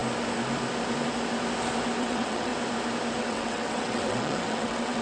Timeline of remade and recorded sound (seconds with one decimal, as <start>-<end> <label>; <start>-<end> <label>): 0.0-2.0 recorded; 2.0-2.5 remade; 2.5-3.2 recorded; 3.2-5.0 remade